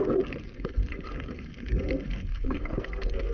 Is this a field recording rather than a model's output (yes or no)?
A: no